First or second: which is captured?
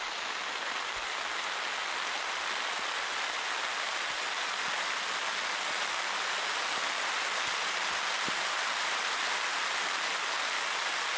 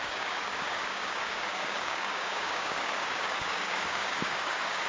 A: first